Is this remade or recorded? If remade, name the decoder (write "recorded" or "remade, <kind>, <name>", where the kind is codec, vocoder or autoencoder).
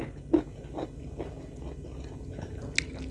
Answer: recorded